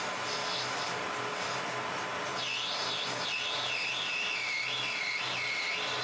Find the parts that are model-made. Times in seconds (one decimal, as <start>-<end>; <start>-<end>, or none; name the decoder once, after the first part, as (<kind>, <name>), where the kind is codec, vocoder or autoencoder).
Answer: none